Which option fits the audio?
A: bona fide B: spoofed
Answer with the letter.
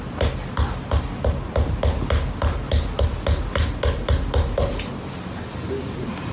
A